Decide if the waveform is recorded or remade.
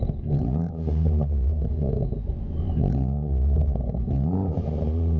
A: remade